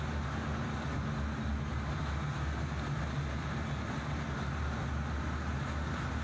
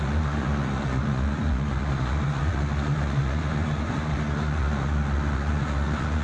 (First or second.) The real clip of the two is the first